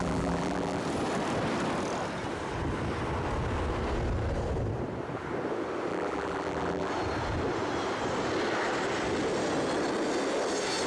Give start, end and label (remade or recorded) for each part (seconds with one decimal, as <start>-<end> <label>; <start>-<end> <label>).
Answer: 0.0-0.8 remade; 0.8-5.9 recorded; 5.9-6.9 remade; 6.9-10.9 recorded